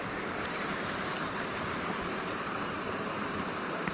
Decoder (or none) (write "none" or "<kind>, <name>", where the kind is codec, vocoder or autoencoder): vocoder, BigVGAN v2